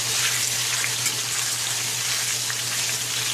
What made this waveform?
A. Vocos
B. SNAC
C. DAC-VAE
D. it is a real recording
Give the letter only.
D